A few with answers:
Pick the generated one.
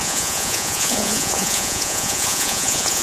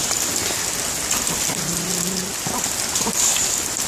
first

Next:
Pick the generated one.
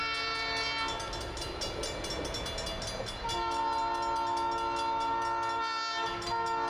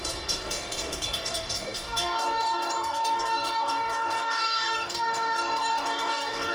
second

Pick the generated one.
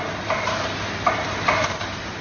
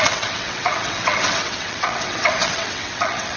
second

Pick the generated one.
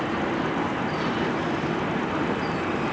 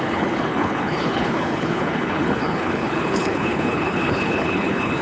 second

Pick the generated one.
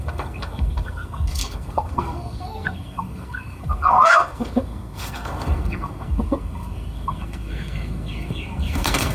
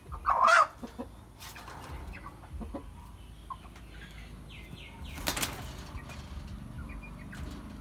first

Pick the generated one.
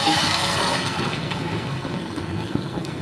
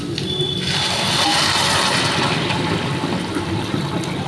first